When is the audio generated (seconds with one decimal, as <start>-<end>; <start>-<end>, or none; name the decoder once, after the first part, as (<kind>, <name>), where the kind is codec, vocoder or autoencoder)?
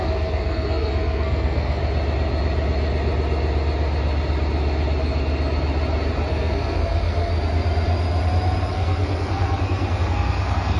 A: 0.0-1.8 (codec, SNAC); 6.3-7.3; 8.7-10.8